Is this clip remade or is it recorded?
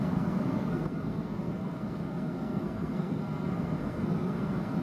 remade